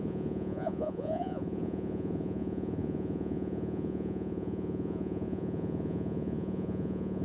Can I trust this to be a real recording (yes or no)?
no